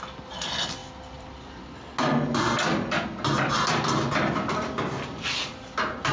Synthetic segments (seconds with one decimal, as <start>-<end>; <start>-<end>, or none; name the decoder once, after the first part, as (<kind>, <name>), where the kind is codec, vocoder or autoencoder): none